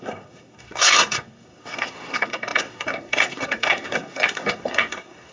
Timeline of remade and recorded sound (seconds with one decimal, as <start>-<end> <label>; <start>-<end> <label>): 0.0-5.3 remade